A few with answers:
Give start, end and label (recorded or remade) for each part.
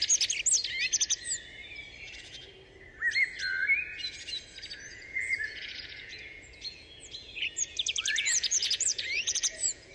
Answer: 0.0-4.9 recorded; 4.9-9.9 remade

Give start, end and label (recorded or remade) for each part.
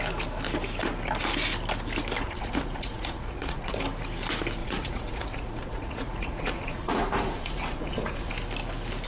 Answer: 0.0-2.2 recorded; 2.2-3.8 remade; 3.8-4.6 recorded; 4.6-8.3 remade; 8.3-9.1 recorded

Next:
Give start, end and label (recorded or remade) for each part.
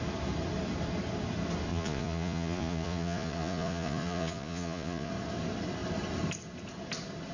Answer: 0.0-1.7 recorded; 1.7-5.1 remade; 5.1-7.3 recorded